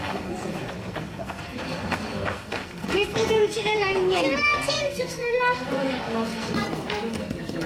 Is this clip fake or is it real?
fake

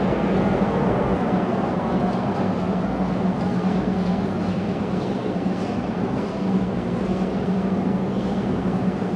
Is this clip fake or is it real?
fake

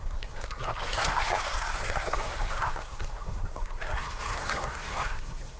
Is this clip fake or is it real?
fake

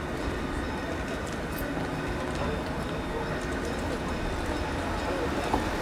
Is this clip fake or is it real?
real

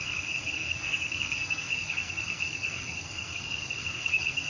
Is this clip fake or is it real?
fake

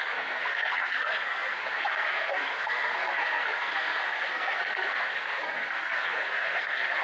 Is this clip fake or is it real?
fake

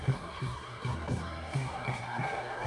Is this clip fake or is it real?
fake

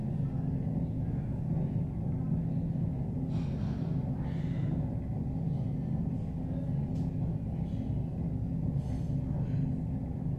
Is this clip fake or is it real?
real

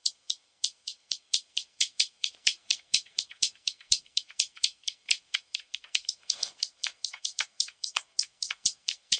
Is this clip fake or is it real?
fake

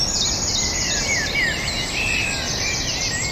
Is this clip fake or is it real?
real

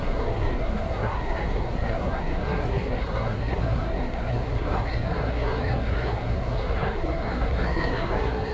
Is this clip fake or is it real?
fake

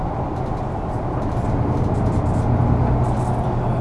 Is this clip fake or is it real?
real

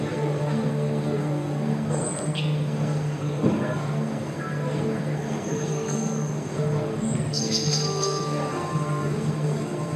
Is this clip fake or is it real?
fake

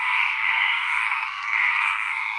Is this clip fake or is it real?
fake